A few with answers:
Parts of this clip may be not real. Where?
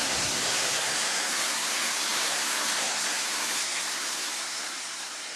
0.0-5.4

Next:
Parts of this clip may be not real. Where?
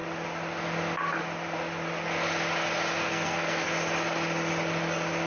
3.0-3.7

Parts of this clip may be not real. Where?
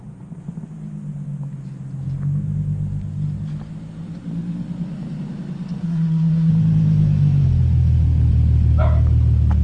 5.8-6.5